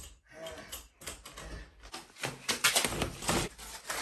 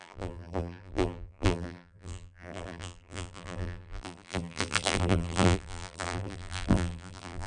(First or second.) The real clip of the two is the first